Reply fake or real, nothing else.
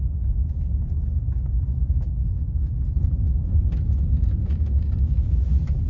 real